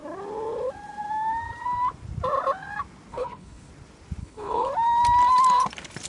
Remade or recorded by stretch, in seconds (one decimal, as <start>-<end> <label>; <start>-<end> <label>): 0.0-3.1 recorded; 3.1-3.7 remade; 3.7-4.2 recorded; 4.2-4.7 remade; 4.7-6.1 recorded